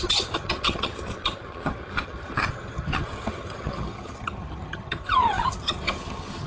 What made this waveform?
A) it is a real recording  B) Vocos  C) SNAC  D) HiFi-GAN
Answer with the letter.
D